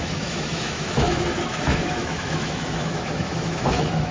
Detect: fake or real fake